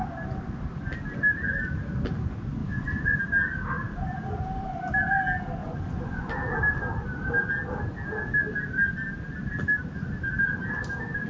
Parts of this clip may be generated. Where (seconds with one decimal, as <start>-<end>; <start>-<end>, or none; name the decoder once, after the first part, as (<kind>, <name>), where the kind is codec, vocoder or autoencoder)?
2.6-3.2 (vocoder, Vocos); 5.6-6.3